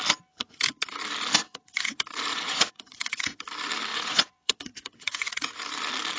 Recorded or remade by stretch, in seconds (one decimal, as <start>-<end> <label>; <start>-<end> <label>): 0.0-1.4 recorded; 1.4-1.9 remade; 1.9-2.3 recorded; 2.3-3.4 remade; 3.4-3.9 recorded; 3.9-5.5 remade; 5.5-6.2 recorded